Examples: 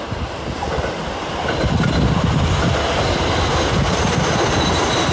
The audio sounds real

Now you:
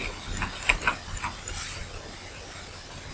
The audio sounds real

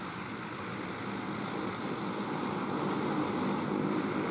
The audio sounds real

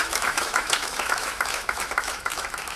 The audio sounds fake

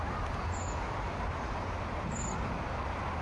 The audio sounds real